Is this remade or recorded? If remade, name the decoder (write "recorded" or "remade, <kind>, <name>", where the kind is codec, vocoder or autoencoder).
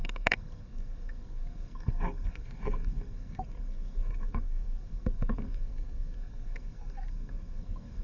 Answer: remade, codec, SNAC